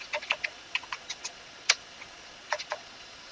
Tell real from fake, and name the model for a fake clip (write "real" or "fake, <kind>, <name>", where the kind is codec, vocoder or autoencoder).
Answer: fake, vocoder, Vocos